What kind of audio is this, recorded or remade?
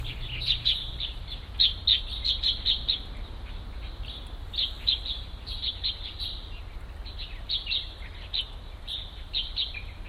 recorded